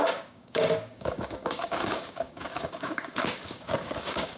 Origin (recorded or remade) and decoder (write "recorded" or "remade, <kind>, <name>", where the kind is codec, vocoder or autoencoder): remade, codec, DAC